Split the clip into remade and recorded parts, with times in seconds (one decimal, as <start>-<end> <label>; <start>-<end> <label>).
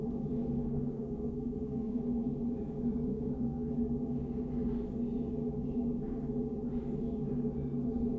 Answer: 0.0-0.6 recorded; 0.6-2.0 remade; 2.0-3.1 recorded; 3.1-3.7 remade; 3.7-8.2 recorded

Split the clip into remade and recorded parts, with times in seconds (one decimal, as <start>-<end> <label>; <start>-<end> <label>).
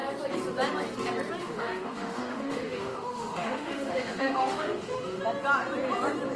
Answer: 0.0-1.4 recorded; 1.4-5.2 remade; 5.2-6.4 recorded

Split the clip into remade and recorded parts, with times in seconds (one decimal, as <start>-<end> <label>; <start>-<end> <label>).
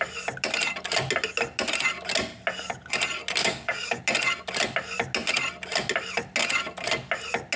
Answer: 0.0-3.4 recorded; 3.4-4.0 remade; 4.0-7.6 recorded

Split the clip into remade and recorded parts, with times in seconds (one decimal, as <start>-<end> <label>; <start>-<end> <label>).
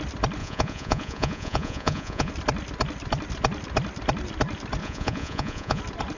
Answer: 0.0-0.4 recorded; 0.4-2.3 remade; 2.3-4.8 recorded; 4.8-5.8 remade; 5.8-6.2 recorded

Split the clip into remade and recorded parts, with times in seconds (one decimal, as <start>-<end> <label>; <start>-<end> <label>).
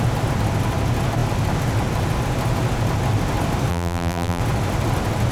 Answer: 0.0-3.7 recorded; 3.7-4.4 remade; 4.4-5.3 recorded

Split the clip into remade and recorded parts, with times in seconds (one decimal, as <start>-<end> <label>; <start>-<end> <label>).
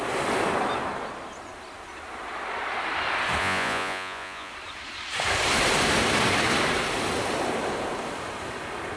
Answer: 0.0-3.4 recorded; 3.4-4.5 remade; 4.5-9.0 recorded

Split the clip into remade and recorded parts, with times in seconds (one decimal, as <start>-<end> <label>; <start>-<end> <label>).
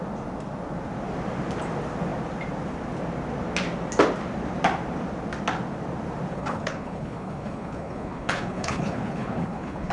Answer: 0.0-6.3 recorded; 6.3-9.9 remade